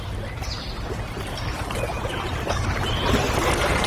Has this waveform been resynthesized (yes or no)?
no